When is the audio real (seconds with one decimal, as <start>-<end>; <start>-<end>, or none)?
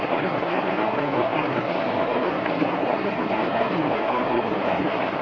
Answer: none